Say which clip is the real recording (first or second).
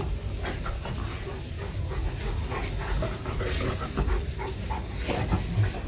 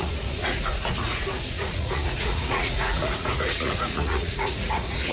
first